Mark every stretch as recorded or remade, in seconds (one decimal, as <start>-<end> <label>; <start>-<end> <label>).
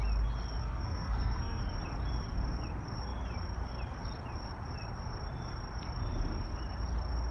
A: 0.0-0.6 recorded; 0.6-1.6 remade; 1.6-7.3 recorded